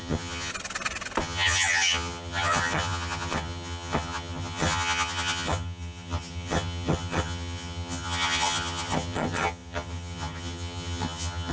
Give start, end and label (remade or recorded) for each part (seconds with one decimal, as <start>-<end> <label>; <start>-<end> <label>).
0.0-0.5 remade; 0.5-1.2 recorded; 1.2-11.5 remade